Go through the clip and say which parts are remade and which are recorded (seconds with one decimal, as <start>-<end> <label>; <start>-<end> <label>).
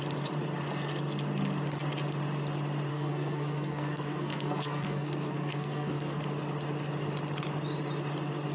0.0-2.9 recorded; 2.9-6.2 remade; 6.2-8.5 recorded